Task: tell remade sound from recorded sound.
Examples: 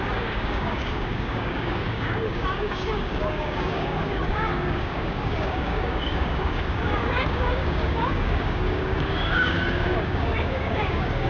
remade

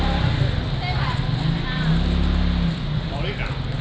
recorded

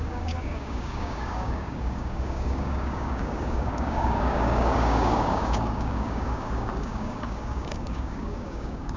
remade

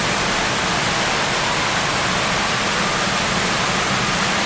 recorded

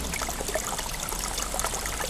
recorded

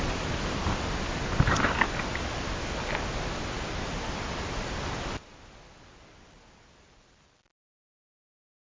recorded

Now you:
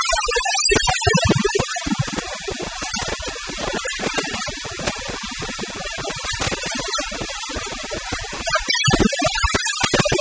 recorded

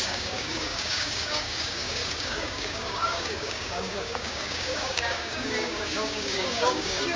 remade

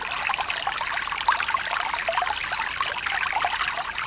recorded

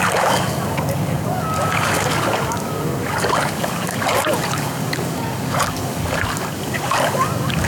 remade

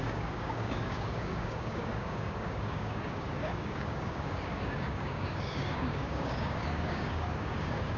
remade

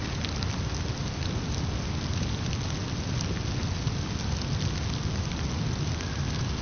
recorded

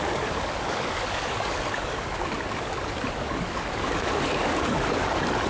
remade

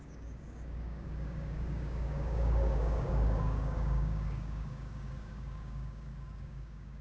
remade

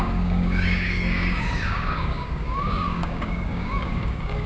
remade